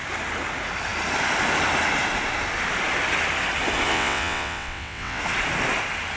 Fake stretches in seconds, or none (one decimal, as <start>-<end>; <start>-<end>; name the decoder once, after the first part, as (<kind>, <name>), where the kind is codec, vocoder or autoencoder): 3.9-5.2 (vocoder, WaveNeXt)